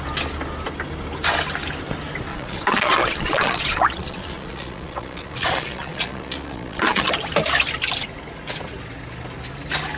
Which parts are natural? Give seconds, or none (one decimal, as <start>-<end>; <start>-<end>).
0.0-2.3; 7.1-10.0